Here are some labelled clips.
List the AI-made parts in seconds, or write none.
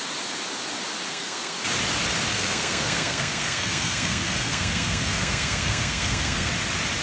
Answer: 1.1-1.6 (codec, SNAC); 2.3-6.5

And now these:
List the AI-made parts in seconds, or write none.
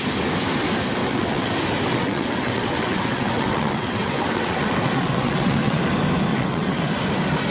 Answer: 1.0-1.5 (vocoder, WaveNeXt); 1.9-5.8; 6.3-7.0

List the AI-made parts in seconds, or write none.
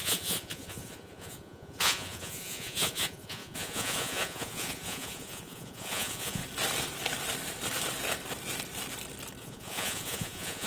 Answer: 0.0-6.4 (vocoder, Vocos); 9.4-10.7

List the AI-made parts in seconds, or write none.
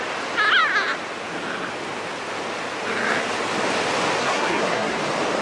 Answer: 4.2-5.0 (codec, SNAC)